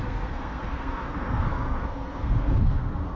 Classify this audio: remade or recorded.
remade